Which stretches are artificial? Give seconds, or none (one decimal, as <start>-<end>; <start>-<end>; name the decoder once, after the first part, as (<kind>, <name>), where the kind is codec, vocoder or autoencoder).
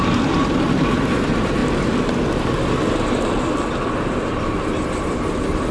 0.0-1.6 (vocoder, BigVGAN v2); 3.9-5.7